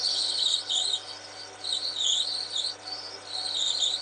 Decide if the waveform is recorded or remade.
recorded